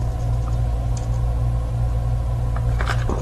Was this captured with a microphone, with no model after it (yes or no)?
yes